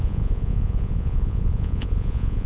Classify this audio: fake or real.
fake